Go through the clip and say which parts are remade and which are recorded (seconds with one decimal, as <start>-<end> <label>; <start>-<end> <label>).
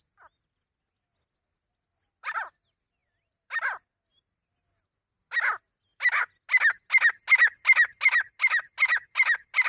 0.0-9.7 recorded